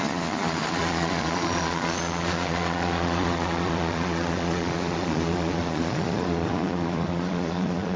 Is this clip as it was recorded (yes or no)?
no